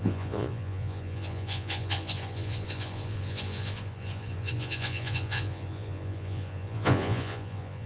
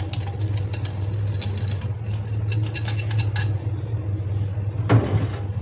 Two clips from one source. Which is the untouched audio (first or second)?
second